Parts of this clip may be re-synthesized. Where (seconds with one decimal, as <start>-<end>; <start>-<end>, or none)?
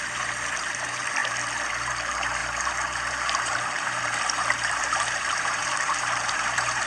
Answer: 0.0-1.2; 1.9-6.9